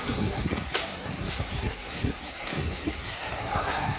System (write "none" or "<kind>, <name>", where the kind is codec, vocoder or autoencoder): codec, SNAC